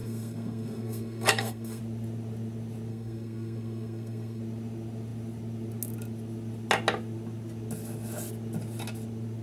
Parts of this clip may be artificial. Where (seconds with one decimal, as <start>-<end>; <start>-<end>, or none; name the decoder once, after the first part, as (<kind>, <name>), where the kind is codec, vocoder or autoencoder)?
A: 0.0-1.8 (codec, SNAC); 2.9-4.4